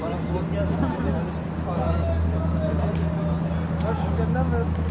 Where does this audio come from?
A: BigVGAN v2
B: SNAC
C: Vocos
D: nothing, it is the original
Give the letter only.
D